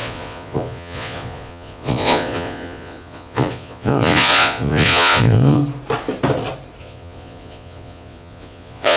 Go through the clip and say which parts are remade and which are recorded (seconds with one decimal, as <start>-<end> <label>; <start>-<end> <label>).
0.0-5.6 remade; 5.6-6.8 recorded; 6.8-9.0 remade